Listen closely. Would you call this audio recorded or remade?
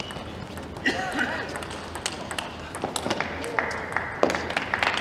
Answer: recorded